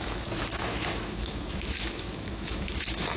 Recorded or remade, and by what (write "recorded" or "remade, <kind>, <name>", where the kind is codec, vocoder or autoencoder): remade, autoencoder, DAC-VAE